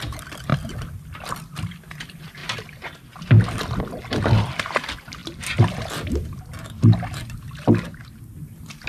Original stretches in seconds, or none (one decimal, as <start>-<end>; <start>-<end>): 0.0-5.2; 6.4-8.9